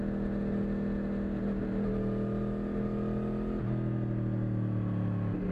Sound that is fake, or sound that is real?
real